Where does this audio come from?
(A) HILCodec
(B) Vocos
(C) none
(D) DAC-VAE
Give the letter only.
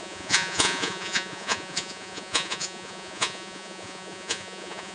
B